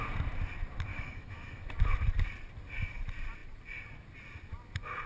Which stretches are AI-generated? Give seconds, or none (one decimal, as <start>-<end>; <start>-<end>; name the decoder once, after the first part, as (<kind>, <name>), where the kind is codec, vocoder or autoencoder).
0.9-1.7 (autoencoder, DAC-VAE)